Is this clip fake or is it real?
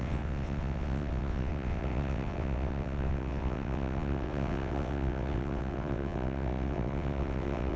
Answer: fake